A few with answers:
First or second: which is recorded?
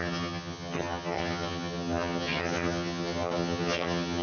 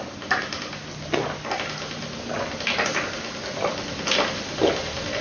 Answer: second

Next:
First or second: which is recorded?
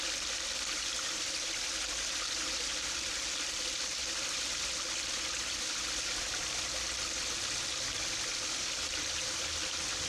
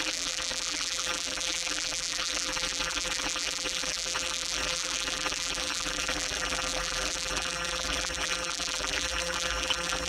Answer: first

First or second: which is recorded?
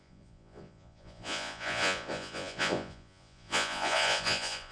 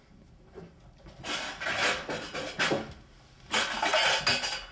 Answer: second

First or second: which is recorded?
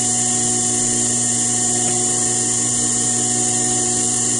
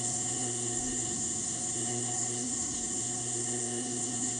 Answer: first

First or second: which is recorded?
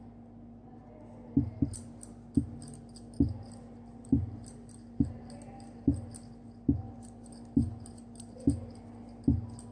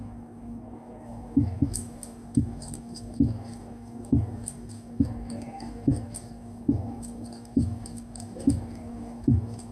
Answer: first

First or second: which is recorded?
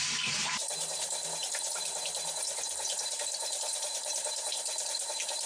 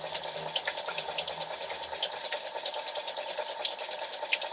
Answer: second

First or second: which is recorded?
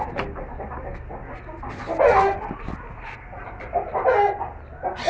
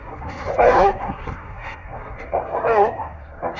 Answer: first